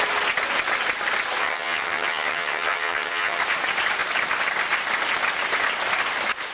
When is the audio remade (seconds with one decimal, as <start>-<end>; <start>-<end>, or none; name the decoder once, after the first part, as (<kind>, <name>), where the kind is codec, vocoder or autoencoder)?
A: 1.4-3.4 (vocoder, HiFi-GAN)